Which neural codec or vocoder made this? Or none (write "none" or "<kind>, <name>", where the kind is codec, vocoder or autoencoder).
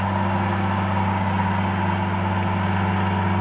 none